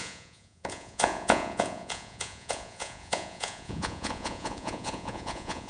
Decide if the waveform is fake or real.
fake